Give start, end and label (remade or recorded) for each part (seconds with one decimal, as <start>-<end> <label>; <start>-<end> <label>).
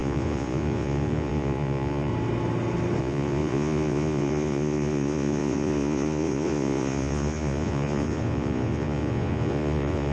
0.0-2.1 remade; 2.1-3.0 recorded; 3.0-10.1 remade